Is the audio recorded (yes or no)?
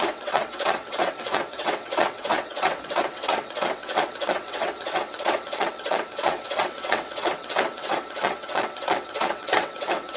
no